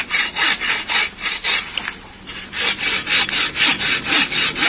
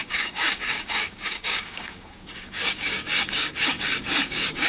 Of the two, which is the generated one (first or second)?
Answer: second